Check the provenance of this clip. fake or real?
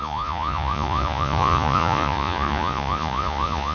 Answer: fake